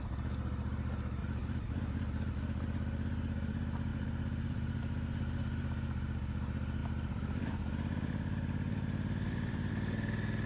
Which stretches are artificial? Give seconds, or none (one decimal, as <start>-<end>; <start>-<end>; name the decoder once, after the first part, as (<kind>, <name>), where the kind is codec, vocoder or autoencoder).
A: 1.2-2.3 (vocoder, BigVGAN v2); 3.9-4.8; 6.8-9.7